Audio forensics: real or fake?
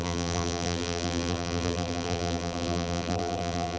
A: fake